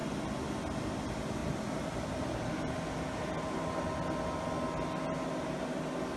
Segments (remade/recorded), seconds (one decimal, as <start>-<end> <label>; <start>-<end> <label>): 0.0-6.2 recorded